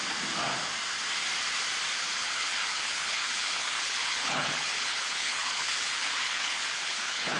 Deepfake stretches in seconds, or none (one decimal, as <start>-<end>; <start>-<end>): 1.9-7.4